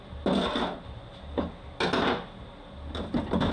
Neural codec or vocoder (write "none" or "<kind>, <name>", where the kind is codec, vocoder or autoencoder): none